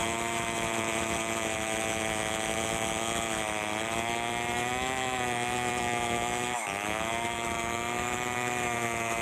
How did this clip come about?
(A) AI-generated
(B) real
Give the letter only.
A